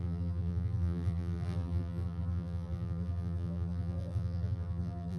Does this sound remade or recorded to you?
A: remade